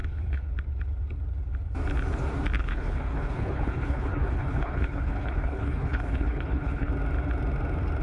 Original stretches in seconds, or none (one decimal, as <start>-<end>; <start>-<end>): 0.5-2.6; 6.9-8.0